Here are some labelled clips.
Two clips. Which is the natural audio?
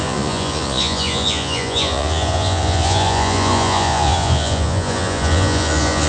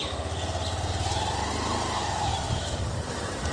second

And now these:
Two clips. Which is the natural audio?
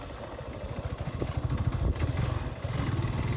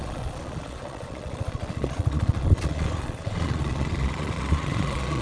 first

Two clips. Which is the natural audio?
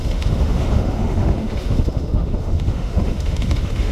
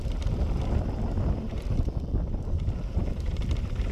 second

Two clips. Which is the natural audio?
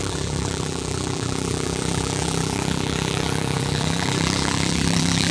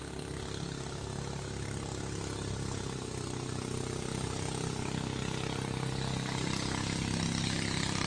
second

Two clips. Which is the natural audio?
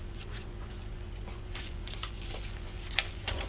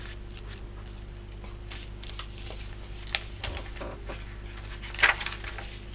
second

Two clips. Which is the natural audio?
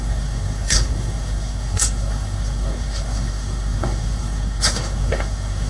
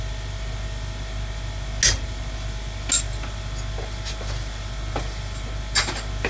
second